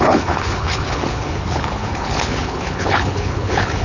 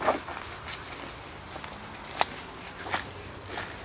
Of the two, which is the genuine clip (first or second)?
second